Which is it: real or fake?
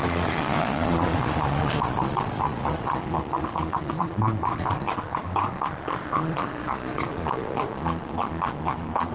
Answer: fake